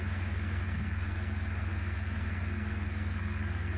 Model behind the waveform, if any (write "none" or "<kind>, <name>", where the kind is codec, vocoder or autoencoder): codec, SNAC